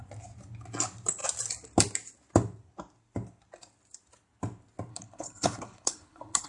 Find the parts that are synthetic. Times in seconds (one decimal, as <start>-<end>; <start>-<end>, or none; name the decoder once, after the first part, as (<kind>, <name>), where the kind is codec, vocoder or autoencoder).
4.9-6.5 (codec, HILCodec)